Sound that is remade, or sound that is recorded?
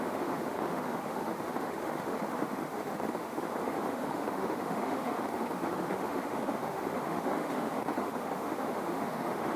remade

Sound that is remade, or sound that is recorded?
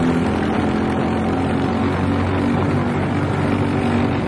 recorded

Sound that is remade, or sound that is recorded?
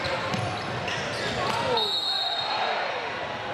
recorded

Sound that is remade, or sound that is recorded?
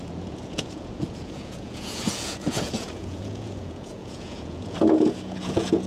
remade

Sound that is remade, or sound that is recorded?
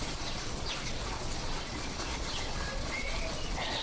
remade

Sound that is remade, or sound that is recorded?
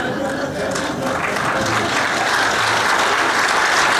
recorded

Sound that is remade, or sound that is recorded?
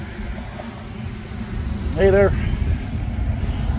recorded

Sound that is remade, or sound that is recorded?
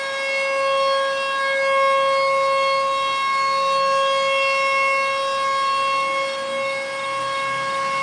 recorded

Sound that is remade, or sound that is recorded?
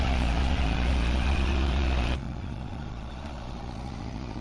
remade